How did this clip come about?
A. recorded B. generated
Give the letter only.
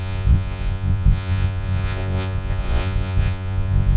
B